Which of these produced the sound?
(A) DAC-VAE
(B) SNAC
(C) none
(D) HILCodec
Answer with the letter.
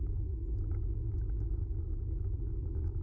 A